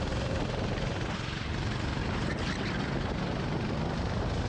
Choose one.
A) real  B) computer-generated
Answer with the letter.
A